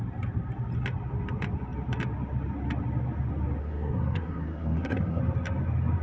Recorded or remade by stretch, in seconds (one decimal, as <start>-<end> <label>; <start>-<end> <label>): 0.0-3.6 recorded; 3.6-5.2 remade; 5.2-6.0 recorded